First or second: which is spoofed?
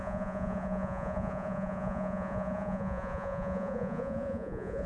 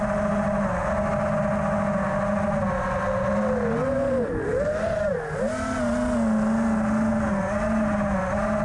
first